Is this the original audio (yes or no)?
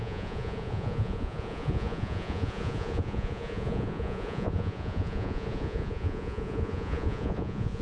no